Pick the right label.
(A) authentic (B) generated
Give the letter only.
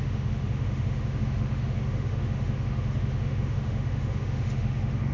B